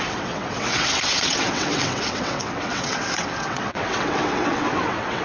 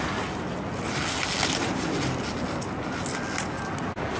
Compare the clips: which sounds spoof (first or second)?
first